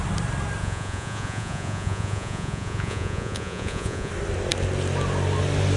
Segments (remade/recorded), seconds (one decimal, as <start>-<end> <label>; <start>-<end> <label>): 0.0-0.6 recorded; 0.6-4.1 remade; 4.1-5.8 recorded